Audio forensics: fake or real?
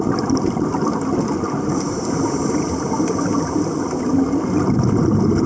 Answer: real